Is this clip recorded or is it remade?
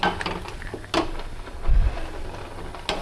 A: recorded